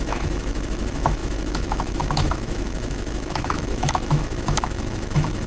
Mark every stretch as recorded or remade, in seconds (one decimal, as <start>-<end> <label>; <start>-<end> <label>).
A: 0.0-5.5 remade